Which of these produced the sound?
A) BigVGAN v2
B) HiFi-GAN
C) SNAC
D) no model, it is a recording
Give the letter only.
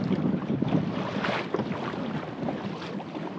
A